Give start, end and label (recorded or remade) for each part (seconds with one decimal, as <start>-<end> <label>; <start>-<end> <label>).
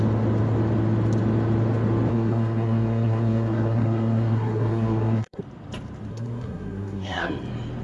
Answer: 0.0-2.1 recorded; 2.1-5.4 remade; 5.4-6.1 recorded; 6.1-7.3 remade; 7.3-7.8 recorded